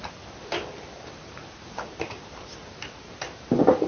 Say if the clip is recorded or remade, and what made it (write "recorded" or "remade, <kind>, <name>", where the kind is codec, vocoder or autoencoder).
recorded